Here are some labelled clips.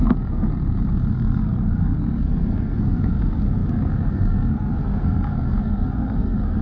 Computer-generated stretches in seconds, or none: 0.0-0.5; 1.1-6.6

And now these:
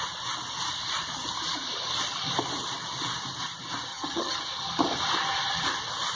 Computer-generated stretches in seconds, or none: 3.9-4.4

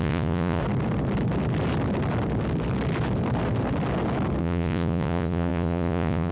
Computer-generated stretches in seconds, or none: 0.0-0.6; 4.4-6.3

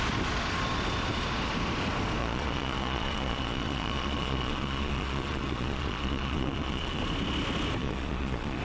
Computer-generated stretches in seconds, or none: 2.2-7.0; 7.8-8.6

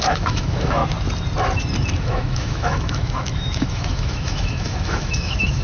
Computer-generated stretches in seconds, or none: 0.0-0.8; 2.0-5.6